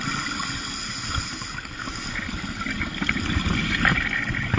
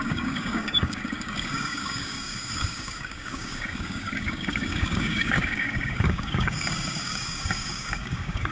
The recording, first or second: first